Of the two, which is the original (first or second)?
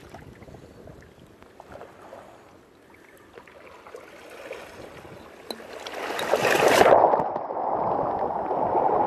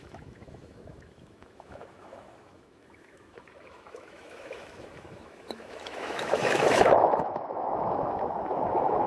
first